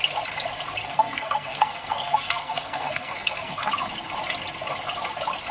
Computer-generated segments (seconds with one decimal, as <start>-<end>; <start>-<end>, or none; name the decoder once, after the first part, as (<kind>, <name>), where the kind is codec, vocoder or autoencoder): 0.8-3.7 (codec, SNAC)